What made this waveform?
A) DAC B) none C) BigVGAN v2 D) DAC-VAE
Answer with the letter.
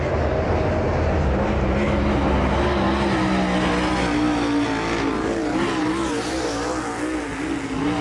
B